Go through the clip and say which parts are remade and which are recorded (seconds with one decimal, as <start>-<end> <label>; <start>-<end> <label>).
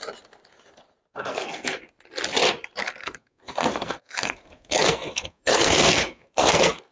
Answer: 0.0-1.1 recorded; 1.1-1.8 remade; 1.8-3.0 recorded; 3.0-6.9 remade